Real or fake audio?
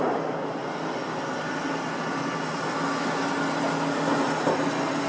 real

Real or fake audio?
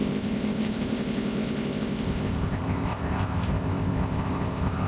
fake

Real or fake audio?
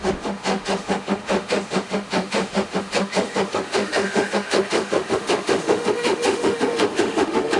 fake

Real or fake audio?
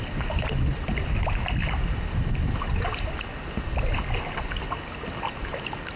real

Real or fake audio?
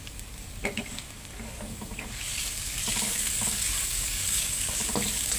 fake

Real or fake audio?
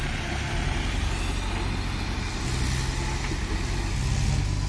real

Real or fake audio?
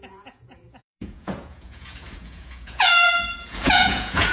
fake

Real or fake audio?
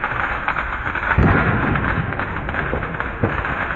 fake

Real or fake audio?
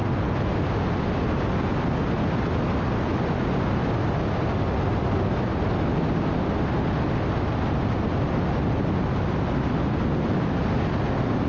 real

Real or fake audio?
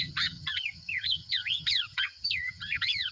fake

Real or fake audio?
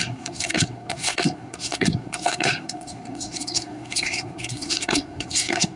fake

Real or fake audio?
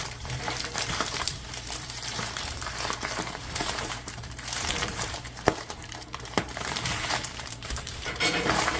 fake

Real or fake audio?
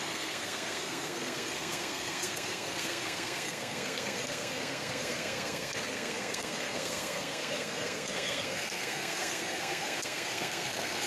fake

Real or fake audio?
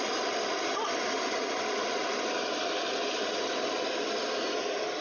real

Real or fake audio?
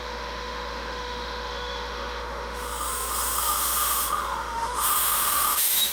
fake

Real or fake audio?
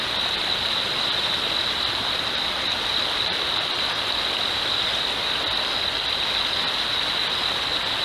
real